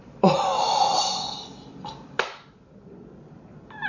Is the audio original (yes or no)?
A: yes